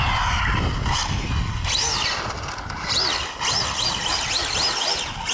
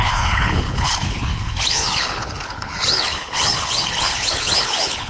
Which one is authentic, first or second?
first